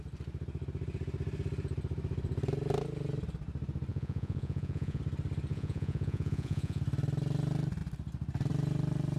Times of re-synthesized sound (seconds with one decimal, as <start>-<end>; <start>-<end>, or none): 3.9-5.0; 5.5-6.8